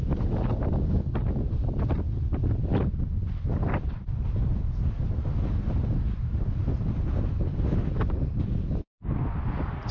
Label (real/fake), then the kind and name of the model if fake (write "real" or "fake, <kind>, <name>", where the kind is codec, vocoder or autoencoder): real